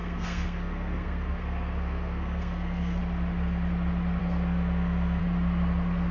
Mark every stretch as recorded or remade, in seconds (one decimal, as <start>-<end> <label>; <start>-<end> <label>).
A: 0.0-3.0 remade; 3.0-4.2 recorded; 4.2-5.2 remade; 5.2-6.1 recorded

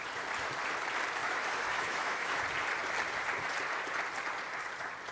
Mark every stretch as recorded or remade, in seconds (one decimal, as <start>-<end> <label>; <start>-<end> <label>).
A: 0.0-1.2 recorded; 1.2-2.4 remade; 2.4-5.1 recorded

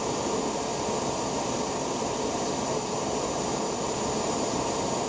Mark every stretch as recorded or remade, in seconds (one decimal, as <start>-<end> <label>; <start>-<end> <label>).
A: 0.0-5.1 recorded

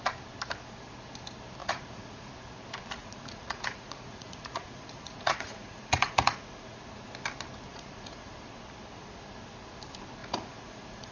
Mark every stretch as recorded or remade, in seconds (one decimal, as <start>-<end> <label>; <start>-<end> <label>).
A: 0.0-1.6 recorded; 1.6-2.3 remade; 2.3-3.0 recorded; 3.0-6.8 remade; 6.8-7.7 recorded; 7.7-8.3 remade; 8.3-10.2 recorded; 10.2-11.1 remade

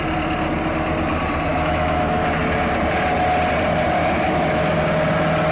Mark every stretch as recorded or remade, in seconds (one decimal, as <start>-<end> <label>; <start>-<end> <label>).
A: 0.0-1.5 recorded; 1.5-2.4 remade; 2.4-4.0 recorded; 4.0-4.8 remade; 4.8-5.5 recorded

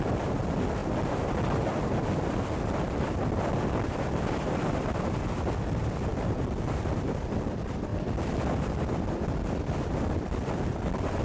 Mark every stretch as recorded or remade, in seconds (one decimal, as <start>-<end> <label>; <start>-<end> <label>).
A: 0.0-7.9 remade; 7.9-8.6 recorded; 8.6-11.2 remade

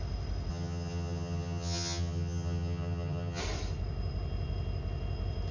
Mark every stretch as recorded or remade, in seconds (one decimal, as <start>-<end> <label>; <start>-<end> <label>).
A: 0.0-0.5 recorded; 0.5-3.4 remade; 3.4-5.5 recorded